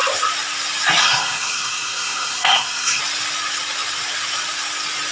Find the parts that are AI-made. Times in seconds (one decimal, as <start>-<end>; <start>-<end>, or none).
1.0-3.0